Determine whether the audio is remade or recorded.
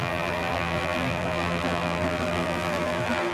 remade